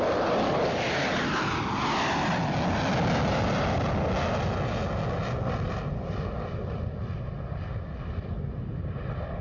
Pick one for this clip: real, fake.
real